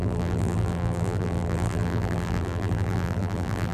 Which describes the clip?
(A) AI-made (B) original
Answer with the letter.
A